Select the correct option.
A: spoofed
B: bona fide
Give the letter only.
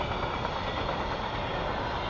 B